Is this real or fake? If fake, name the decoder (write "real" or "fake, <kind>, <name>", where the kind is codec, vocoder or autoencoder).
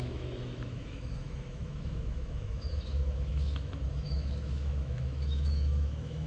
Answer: fake, autoencoder, DAC-VAE